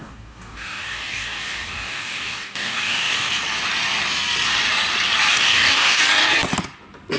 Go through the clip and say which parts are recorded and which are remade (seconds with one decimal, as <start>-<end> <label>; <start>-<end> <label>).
0.0-3.3 remade; 3.3-5.3 recorded; 5.3-6.0 remade; 6.0-7.2 recorded